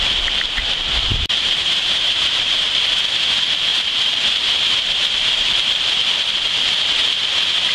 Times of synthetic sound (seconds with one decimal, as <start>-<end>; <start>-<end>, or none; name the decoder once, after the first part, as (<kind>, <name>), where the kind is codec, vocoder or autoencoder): 1.1-2.8 (vocoder, BigVGAN v2); 3.7-5.9